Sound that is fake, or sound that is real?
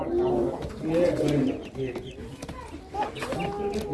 real